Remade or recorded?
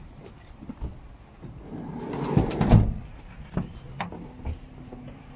recorded